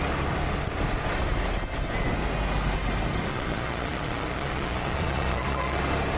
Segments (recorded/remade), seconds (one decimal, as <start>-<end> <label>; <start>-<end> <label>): 0.0-3.3 recorded; 3.3-5.8 remade; 5.8-6.2 recorded